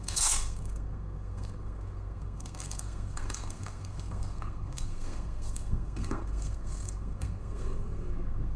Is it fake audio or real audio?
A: fake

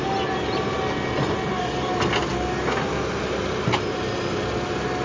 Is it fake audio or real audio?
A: real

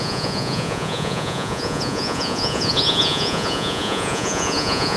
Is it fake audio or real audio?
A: fake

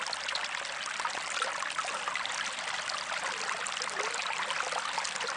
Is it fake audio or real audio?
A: real